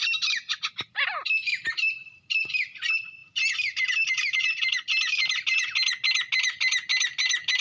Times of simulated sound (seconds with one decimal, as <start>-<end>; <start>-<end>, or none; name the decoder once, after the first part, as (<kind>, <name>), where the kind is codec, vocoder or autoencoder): none